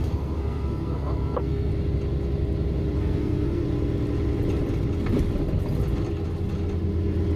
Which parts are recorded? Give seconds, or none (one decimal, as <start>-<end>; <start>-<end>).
1.7-3.0; 3.6-7.4